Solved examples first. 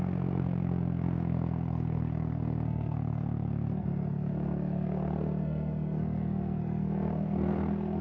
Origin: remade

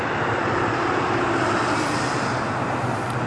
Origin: recorded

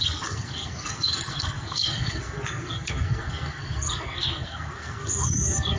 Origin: remade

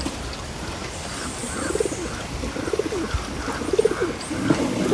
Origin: recorded